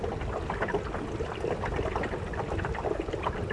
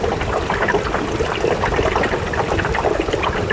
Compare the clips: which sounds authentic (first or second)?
first